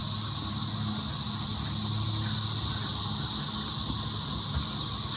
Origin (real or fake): real